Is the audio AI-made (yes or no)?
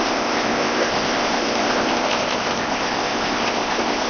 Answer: yes